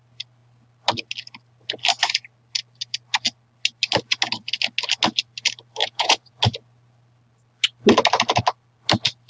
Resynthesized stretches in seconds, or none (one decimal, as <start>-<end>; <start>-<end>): 5.8-6.4